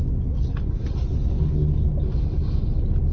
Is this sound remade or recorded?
recorded